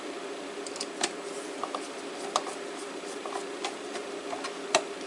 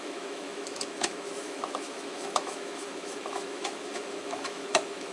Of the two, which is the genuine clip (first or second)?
first